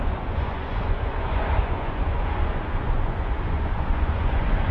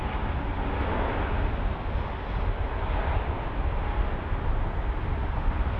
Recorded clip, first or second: second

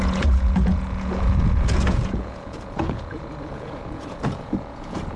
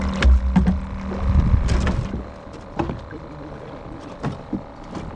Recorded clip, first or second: second